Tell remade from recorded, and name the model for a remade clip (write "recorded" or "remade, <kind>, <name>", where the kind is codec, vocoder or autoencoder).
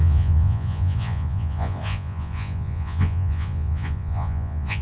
remade, vocoder, Vocos